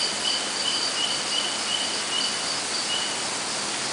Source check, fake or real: real